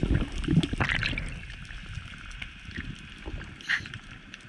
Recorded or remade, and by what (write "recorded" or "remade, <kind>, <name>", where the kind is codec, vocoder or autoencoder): recorded